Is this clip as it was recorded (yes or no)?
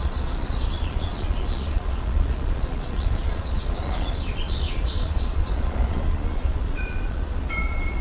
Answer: no